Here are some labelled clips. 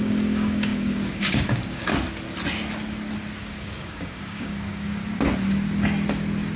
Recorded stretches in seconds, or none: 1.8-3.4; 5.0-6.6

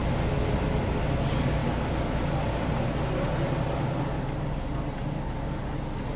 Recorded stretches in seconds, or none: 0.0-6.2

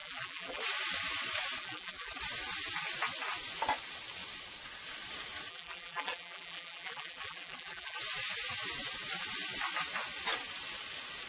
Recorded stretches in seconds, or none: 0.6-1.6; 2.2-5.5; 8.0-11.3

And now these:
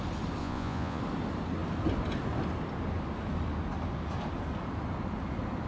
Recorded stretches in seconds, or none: 0.0-0.4; 1.0-5.7

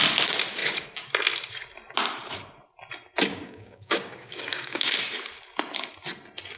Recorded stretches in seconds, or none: 0.0-3.3; 4.9-6.6

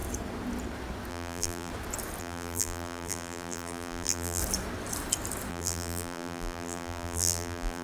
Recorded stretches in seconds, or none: 0.0-1.1; 1.7-2.2; 4.4-5.5

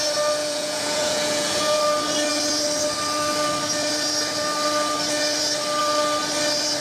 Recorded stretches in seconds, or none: 0.0-0.4; 1.8-6.8